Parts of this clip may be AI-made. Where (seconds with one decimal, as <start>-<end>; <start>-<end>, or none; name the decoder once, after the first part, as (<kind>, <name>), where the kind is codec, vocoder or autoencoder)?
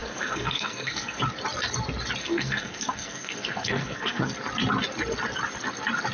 0.0-1.2 (codec, SNAC); 2.2-4.3